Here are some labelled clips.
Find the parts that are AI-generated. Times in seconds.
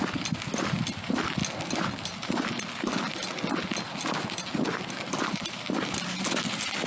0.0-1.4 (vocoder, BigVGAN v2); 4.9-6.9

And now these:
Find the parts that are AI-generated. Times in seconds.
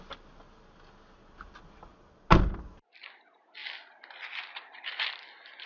none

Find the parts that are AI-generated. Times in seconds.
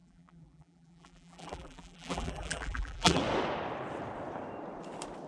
0.0-3.2 (vocoder, BigVGAN v2)